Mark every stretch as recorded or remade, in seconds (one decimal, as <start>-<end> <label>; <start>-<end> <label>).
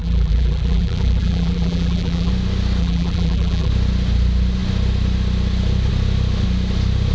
0.0-2.3 remade; 2.3-2.8 recorded; 2.8-3.7 remade; 3.7-7.1 recorded